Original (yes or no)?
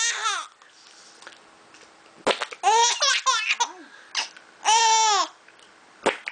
yes